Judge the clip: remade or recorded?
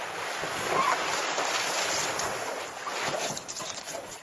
recorded